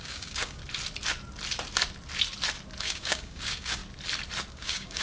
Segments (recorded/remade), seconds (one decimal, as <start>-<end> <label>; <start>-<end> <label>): 0.0-0.6 remade; 0.6-2.8 recorded; 2.8-3.8 remade; 3.8-4.5 recorded; 4.5-5.0 remade